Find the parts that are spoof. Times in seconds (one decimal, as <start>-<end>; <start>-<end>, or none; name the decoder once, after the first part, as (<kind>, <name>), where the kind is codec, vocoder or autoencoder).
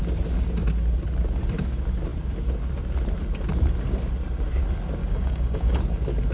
5.0-5.8 (codec, DAC)